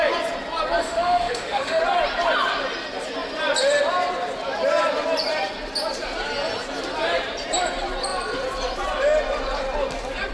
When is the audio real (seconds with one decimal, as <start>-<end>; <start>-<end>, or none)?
0.0-0.8; 1.8-10.3